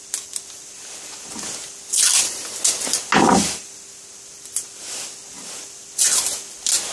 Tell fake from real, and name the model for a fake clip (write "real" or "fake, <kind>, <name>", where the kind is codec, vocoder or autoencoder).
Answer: real